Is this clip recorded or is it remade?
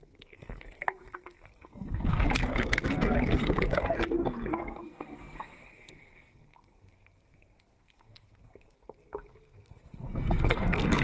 remade